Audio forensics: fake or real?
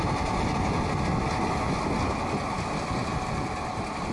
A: real